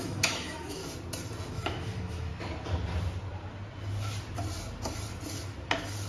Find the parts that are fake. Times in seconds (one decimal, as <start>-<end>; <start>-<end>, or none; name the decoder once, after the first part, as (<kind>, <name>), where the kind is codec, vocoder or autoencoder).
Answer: 0.0-0.8 (autoencoder, DAC-VAE); 1.5-2.3